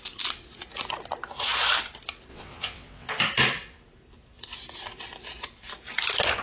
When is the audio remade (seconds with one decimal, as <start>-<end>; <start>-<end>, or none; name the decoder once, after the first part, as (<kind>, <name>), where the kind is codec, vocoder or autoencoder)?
2.3-3.1 (vocoder, WaveNeXt)